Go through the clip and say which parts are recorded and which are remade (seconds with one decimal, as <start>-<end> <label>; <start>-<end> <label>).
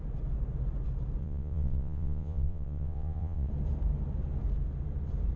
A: 0.0-1.2 recorded; 1.2-3.5 remade; 3.5-5.4 recorded